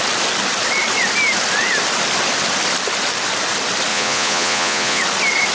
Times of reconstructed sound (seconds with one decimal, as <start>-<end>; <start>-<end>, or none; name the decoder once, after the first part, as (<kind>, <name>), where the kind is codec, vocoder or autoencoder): 3.9-5.0 (vocoder, Vocos)